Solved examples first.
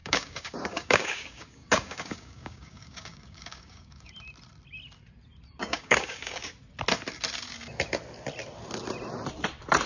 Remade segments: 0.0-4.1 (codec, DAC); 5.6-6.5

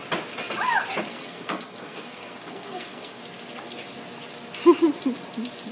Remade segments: 1.1-3.2 (codec, SNAC)

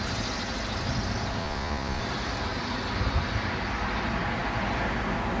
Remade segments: 1.4-2.0 (vocoder, Vocos)

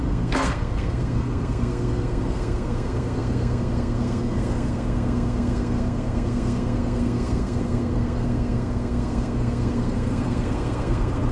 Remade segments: 0.0-11.3 (codec, SNAC)

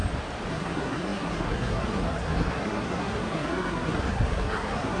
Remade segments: 0.5-5.0 (codec, SNAC)

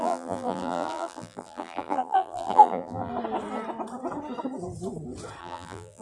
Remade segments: 0.0-3.1 (vocoder, BigVGAN v2); 5.4-6.0